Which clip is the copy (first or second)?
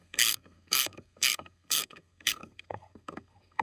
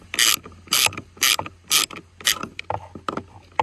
first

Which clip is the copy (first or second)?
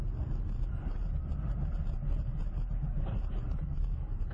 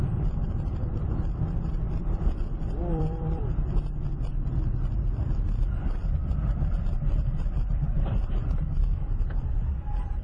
second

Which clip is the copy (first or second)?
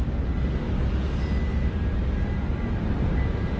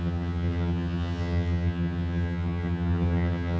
second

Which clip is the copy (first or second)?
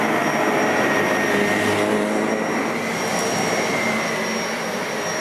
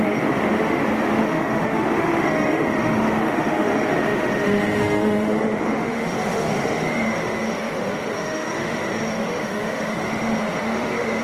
second